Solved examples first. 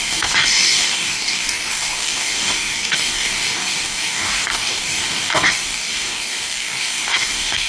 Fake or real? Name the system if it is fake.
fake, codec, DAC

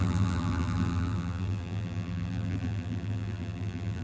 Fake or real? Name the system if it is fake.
fake, vocoder, BigVGAN v2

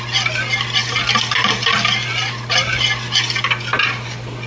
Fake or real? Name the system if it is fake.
real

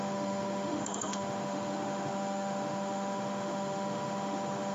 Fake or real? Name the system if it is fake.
fake, autoencoder, DAC-VAE